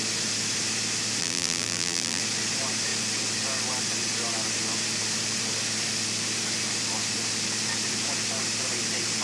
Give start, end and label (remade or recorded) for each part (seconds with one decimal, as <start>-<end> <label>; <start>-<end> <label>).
0.0-1.2 recorded; 1.2-2.2 remade; 2.2-9.2 recorded